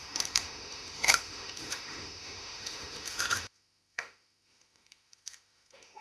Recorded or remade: remade